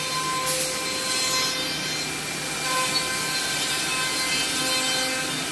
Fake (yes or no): no